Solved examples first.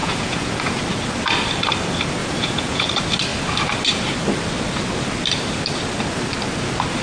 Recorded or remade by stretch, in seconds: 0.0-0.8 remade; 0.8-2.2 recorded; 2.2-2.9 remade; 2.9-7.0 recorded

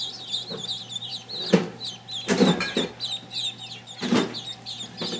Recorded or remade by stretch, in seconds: 0.0-5.2 recorded

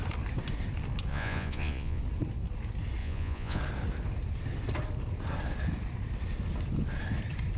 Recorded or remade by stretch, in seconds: 0.0-1.1 recorded; 1.1-2.0 remade; 2.0-3.0 recorded; 3.0-3.6 remade; 3.6-7.6 recorded

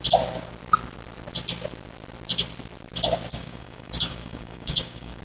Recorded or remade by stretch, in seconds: 0.0-3.3 recorded; 3.3-5.2 remade

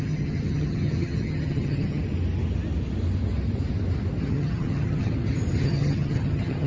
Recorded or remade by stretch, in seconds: 0.0-2.0 remade; 2.0-4.2 recorded; 4.2-5.1 remade; 5.1-5.6 recorded; 5.6-6.7 remade